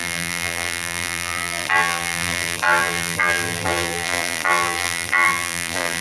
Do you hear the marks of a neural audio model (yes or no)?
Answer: yes